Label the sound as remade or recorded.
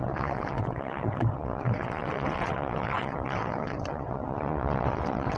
remade